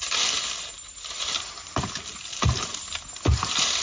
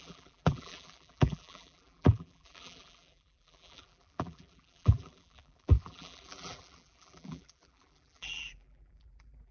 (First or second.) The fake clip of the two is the second